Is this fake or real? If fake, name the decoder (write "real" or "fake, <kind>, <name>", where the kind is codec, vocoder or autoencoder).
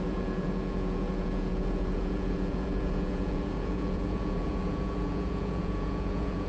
fake, vocoder, Vocos